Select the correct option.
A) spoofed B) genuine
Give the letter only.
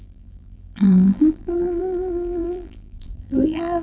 A